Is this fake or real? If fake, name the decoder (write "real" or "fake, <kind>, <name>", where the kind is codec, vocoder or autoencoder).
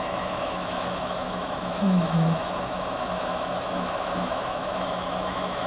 fake, autoencoder, DAC-VAE